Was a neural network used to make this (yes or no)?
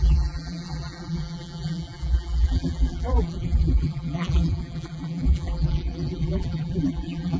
yes